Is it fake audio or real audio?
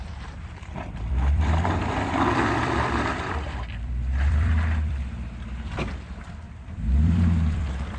fake